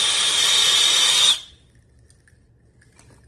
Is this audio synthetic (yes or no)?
no